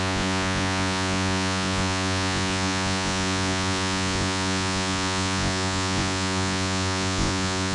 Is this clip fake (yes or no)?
yes